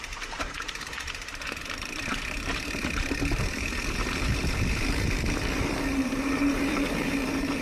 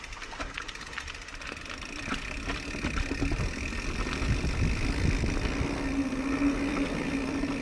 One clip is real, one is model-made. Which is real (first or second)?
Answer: second